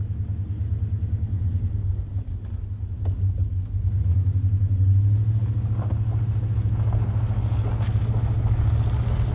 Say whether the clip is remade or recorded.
recorded